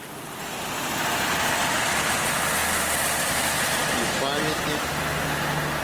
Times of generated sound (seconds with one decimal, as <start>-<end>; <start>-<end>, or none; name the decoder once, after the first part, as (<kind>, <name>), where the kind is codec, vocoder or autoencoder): none